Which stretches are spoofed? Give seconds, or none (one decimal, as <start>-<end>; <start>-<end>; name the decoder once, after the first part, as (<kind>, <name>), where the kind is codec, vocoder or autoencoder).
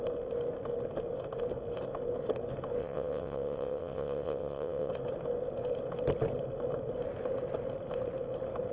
2.8-4.9 (vocoder, WaveNeXt)